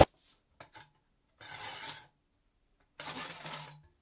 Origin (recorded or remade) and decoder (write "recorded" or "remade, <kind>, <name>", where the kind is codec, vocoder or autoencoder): recorded